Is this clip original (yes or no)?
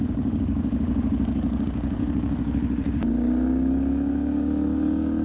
no